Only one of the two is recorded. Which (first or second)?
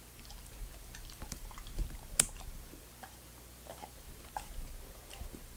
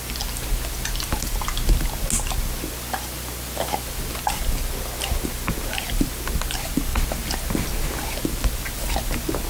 second